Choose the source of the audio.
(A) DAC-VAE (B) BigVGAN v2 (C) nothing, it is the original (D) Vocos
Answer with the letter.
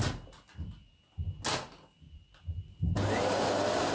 C